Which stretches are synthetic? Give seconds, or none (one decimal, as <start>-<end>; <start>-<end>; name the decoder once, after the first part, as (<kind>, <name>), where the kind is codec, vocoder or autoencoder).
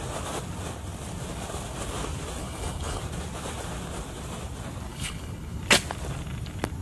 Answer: 2.4-3.0 (codec, HILCodec); 4.9-5.6